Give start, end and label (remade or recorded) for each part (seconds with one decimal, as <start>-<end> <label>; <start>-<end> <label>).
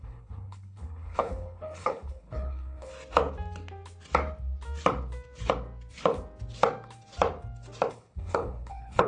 0.0-2.9 remade; 2.9-7.9 recorded; 7.9-9.1 remade